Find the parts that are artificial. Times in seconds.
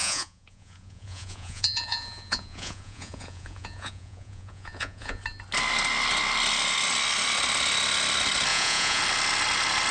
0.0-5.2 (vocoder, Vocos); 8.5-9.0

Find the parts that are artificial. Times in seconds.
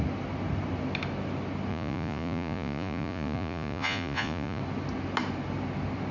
1.7-4.6 (vocoder, Vocos)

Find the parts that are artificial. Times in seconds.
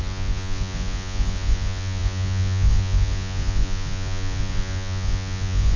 0.0-5.8 (vocoder, Vocos)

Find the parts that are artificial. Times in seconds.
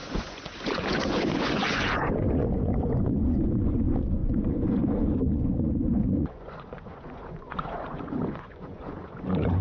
0.0-9.6 (vocoder, Vocos)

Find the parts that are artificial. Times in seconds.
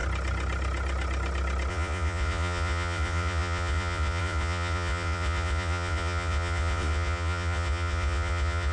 1.7-8.7 (vocoder, Vocos)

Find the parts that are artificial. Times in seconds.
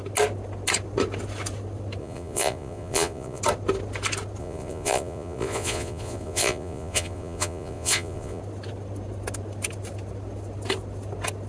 2.0-3.4 (vocoder, Vocos); 4.4-8.4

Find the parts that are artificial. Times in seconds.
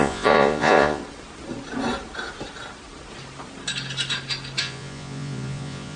0.0-1.0 (vocoder, Vocos); 4.6-6.0